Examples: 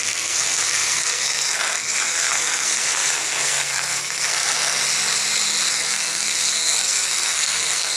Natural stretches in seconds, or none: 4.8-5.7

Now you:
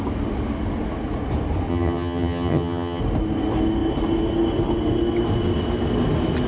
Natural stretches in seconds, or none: 0.0-1.7; 3.0-6.5